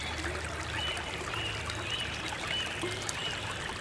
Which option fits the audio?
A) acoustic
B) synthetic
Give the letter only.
B